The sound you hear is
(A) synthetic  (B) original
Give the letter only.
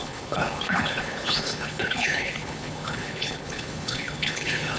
A